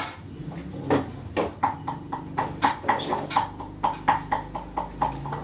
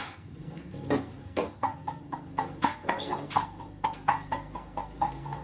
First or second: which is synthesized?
second